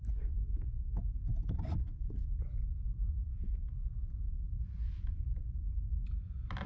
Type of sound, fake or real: real